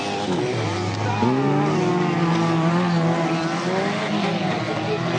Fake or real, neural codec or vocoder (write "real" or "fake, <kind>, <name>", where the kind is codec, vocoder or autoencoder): real